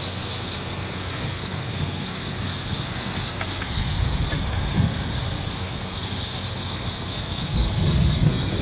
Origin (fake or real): fake